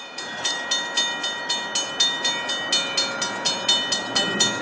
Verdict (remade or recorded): recorded